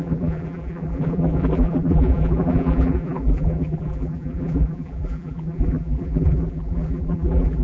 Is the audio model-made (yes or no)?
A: yes